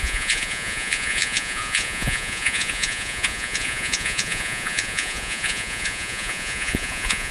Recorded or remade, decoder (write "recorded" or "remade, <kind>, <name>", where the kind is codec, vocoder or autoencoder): remade, vocoder, Vocos